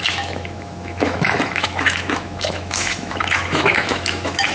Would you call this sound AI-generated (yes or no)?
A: yes